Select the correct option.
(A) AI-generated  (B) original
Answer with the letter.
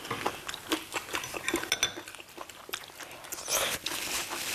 B